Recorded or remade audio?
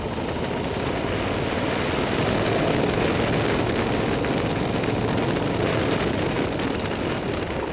recorded